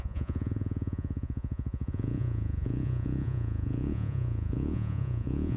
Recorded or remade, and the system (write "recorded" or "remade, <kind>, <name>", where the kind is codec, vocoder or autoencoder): remade, vocoder, Vocos